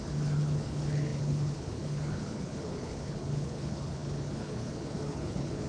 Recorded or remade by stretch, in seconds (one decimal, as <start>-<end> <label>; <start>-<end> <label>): 0.0-5.7 remade